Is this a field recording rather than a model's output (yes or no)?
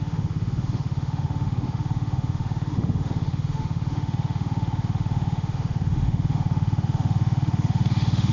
no